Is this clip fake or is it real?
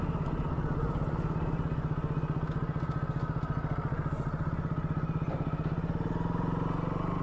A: real